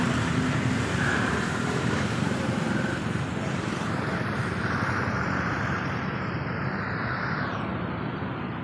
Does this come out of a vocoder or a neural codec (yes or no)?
yes